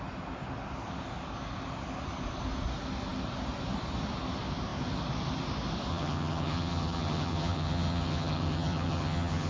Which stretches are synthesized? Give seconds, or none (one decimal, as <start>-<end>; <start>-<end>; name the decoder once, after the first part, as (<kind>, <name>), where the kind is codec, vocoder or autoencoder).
5.9-9.5 (vocoder, HiFi-GAN)